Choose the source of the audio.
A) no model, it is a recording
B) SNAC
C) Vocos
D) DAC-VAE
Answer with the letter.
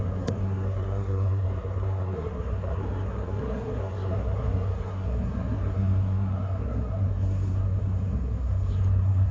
B